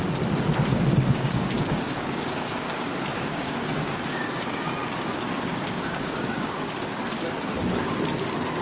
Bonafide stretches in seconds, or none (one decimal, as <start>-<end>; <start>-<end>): 0.0-0.7; 4.7-5.5; 6.7-8.6